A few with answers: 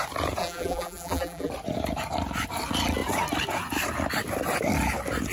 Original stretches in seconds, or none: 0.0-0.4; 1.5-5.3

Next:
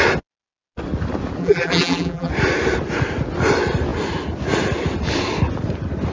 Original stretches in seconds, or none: 0.0-1.4; 2.3-6.1

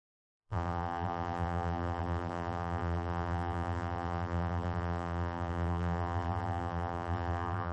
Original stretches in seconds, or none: none

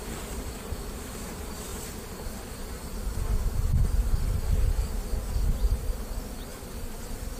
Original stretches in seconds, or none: 0.0-6.5

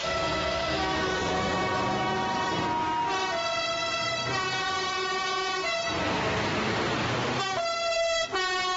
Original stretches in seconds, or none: 0.0-8.8